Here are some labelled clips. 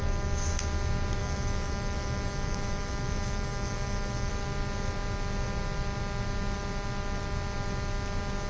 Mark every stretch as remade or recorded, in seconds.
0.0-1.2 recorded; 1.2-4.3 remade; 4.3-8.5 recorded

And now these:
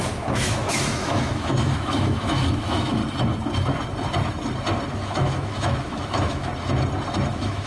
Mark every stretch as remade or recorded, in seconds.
0.0-3.0 remade; 3.0-4.9 recorded; 4.9-6.5 remade; 6.5-7.3 recorded; 7.3-7.7 remade